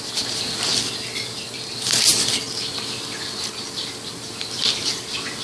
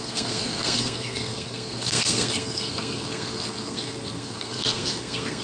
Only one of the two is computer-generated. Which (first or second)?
second